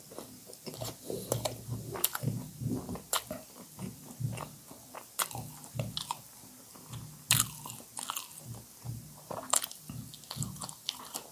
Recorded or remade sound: recorded